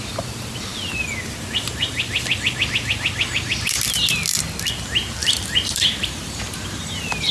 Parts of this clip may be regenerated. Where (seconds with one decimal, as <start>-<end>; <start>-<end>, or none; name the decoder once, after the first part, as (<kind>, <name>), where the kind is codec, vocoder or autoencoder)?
5.2-6.4 (vocoder, BigVGAN v2)